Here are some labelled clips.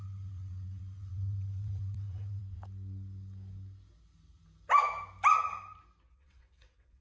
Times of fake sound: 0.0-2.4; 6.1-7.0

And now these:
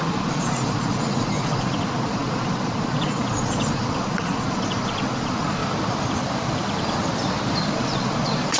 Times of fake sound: 0.0-5.6; 7.7-8.6

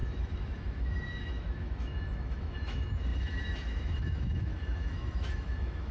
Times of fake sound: 0.0-5.9

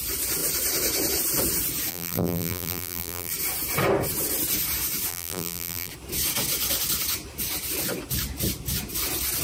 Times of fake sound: 1.9-3.3; 5.1-5.9